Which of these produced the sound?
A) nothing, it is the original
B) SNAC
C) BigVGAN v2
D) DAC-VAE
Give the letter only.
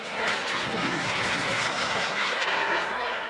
B